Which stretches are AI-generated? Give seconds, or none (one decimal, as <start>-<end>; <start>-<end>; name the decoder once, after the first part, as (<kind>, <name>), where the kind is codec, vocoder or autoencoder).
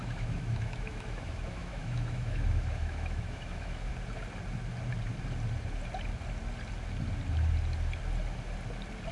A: 0.0-3.9 (autoencoder, DAC-VAE)